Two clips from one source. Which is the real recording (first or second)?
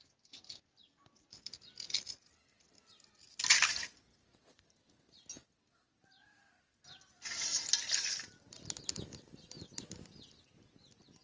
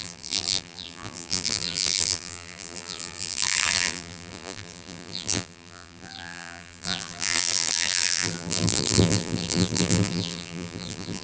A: first